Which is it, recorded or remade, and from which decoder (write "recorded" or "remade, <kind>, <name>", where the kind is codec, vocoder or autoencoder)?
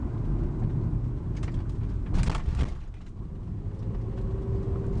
recorded